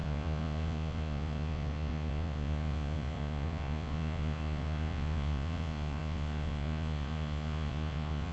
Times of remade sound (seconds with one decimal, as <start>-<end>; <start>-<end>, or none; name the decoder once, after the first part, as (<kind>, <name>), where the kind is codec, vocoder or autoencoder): 0.0-8.3 (vocoder, Vocos)